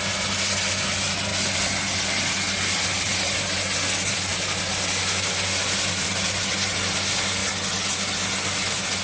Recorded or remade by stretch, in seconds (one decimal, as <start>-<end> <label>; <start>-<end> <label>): 0.0-9.0 recorded